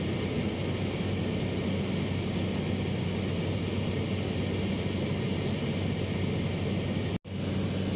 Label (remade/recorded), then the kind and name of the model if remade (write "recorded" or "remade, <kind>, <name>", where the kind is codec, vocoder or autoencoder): recorded